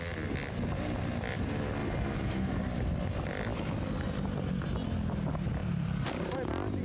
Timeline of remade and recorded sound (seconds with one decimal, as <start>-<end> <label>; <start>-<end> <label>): 0.0-1.8 recorded; 1.8-2.8 remade; 2.8-5.6 recorded; 5.6-6.3 remade; 6.3-6.8 recorded